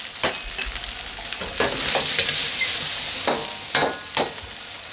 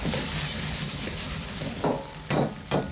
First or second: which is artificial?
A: second